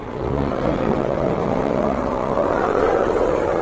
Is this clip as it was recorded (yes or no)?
no